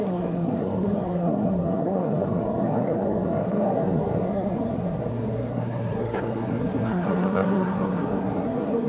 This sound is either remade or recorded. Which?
remade